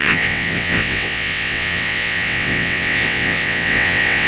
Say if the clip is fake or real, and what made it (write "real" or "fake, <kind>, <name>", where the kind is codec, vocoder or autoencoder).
fake, vocoder, WaveNeXt